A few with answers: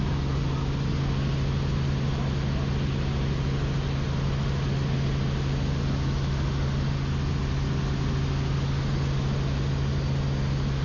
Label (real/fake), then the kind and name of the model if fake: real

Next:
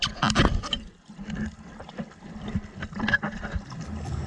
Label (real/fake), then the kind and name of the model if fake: real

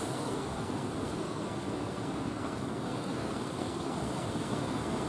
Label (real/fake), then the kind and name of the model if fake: fake, codec, SNAC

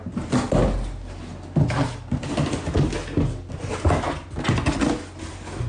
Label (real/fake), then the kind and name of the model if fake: real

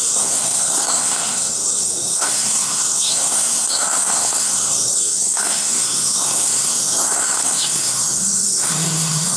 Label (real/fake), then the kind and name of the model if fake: fake, codec, SNAC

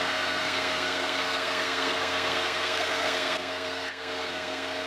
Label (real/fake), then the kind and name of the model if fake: fake, codec, SNAC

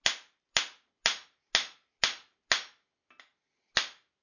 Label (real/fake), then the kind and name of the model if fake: real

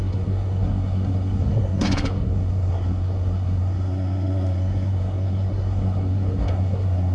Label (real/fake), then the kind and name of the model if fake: fake, codec, SNAC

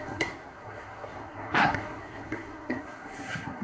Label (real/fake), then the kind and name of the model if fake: fake, codec, SNAC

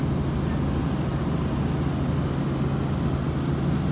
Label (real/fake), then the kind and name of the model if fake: real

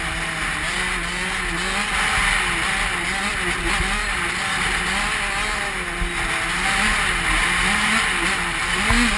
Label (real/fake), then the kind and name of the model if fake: real